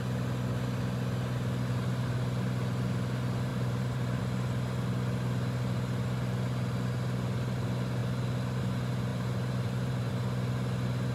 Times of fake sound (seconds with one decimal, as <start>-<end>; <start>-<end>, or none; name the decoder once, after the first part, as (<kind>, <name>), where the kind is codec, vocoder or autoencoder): 3.5-4.2 (vocoder, BigVGAN v2); 9.1-10.1

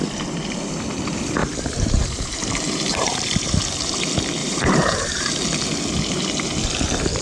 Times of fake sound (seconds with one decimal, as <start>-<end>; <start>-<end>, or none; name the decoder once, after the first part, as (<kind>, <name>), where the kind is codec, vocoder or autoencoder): 1.4-3.5 (vocoder, BigVGAN v2); 4.4-5.2

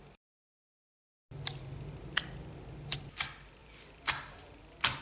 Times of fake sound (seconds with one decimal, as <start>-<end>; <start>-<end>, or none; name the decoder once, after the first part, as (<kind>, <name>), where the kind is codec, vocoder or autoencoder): 3.6-4.6 (vocoder, BigVGAN v2)

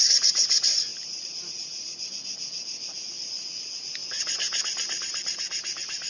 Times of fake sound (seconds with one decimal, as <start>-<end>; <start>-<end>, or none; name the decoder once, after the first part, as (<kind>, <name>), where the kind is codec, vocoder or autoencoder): 0.9-2.1 (vocoder, BigVGAN v2)

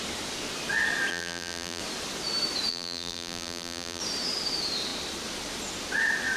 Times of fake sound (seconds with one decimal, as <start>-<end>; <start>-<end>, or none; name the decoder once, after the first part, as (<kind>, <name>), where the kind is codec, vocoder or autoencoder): 1.1-1.8 (vocoder, BigVGAN v2); 2.7-4.0